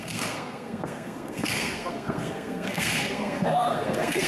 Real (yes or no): no